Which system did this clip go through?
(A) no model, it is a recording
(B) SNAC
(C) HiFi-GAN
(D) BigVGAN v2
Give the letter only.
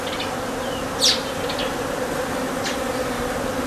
A